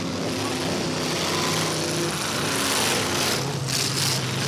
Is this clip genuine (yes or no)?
yes